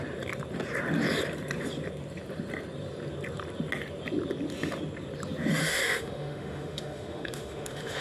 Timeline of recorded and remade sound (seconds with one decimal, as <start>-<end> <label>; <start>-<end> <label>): 0.0-5.6 recorded; 5.6-8.0 remade